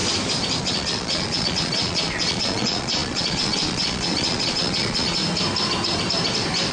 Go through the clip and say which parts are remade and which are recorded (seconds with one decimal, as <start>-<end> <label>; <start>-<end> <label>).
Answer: 0.0-0.6 recorded; 0.6-5.2 remade; 5.2-6.7 recorded